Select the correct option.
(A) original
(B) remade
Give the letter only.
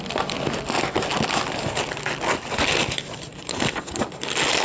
A